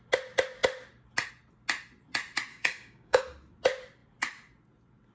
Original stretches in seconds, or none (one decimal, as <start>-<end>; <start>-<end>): 0.0-2.5; 3.2-5.1